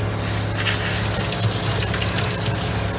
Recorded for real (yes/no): yes